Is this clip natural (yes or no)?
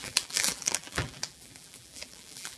no